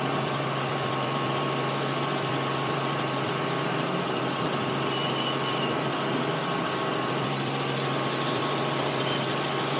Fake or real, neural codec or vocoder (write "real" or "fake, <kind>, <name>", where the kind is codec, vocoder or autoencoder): fake, vocoder, BigVGAN v2